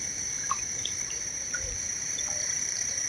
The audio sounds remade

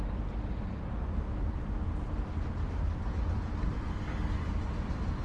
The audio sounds recorded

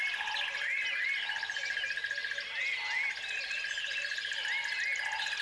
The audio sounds recorded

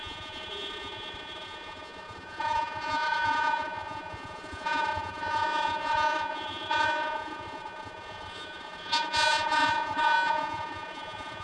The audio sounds remade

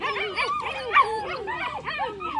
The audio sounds recorded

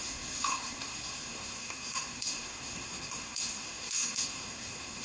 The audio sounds remade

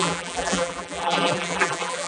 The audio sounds remade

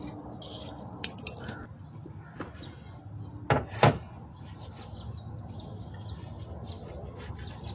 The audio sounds recorded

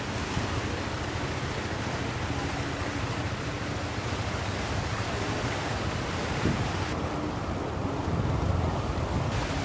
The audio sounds recorded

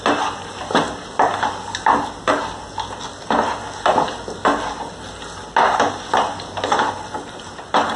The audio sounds recorded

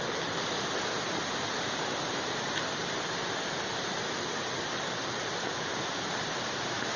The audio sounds recorded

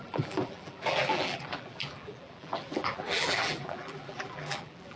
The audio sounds remade